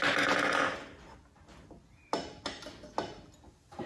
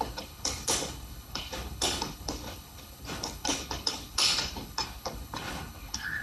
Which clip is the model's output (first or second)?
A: second